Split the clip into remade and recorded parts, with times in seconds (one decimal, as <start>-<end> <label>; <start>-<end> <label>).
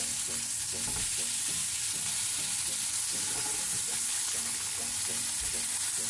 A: 0.0-3.9 recorded; 3.9-4.8 remade; 4.8-6.1 recorded